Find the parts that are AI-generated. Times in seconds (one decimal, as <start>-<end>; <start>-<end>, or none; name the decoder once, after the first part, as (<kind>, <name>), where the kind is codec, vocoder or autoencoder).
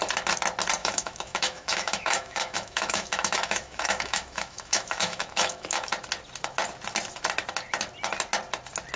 0.8-5.9 (autoencoder, DAC-VAE)